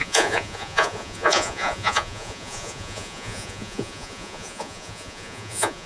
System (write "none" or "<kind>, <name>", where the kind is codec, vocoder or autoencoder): vocoder, Vocos